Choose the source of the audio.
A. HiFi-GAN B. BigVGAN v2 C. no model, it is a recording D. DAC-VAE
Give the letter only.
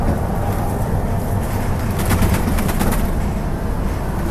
C